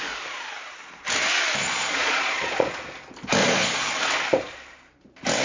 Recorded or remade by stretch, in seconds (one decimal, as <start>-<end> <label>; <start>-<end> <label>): 0.0-1.6 recorded; 1.6-2.7 remade; 2.7-3.4 recorded; 3.4-4.0 remade; 4.0-5.4 recorded